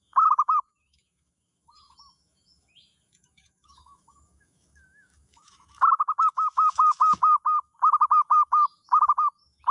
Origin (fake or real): fake